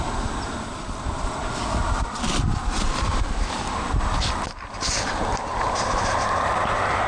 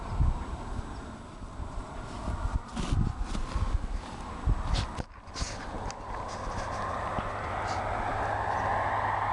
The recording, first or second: second